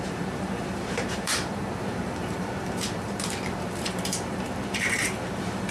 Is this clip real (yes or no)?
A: no